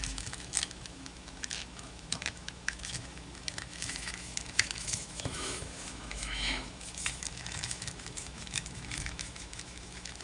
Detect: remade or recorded remade